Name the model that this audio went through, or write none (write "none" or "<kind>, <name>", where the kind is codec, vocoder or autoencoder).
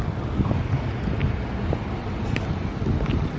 none